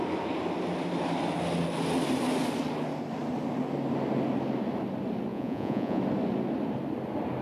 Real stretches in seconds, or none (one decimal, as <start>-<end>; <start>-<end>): 0.0-5.3; 6.0-7.4

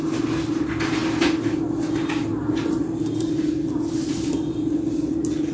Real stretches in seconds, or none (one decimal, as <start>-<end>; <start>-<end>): 0.0-5.5

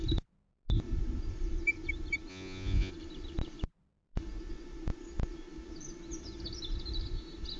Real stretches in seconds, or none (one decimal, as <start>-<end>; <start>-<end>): 0.0-2.3; 2.9-7.6

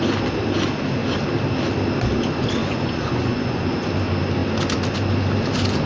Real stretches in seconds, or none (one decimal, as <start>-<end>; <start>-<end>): 0.0-2.6; 3.9-5.9

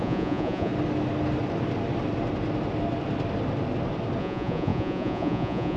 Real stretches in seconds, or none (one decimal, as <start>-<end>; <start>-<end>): 0.7-4.2

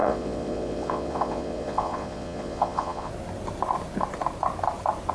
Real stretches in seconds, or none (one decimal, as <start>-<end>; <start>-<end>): 3.1-5.1